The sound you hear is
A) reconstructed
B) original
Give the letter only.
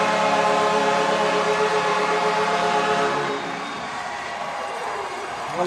A